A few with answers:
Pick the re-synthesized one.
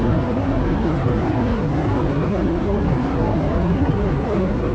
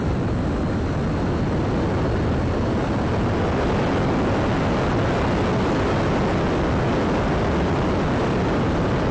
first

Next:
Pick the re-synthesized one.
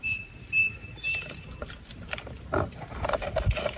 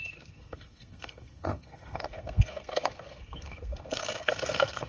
second